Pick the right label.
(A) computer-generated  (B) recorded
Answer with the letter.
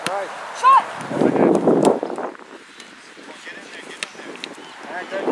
B